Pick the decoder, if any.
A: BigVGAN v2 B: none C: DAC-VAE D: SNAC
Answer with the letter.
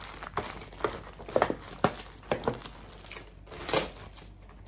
B